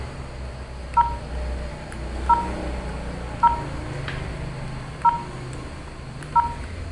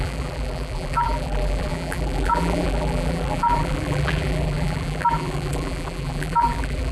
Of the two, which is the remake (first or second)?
second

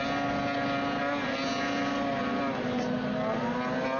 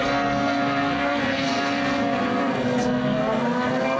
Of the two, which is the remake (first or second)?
second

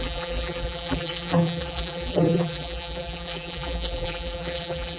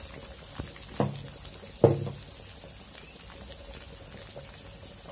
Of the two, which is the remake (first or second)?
first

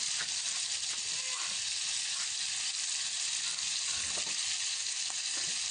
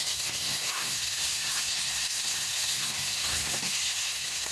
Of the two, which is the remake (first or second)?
second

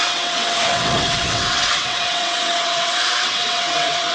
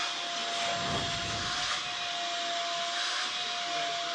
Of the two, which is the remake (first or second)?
first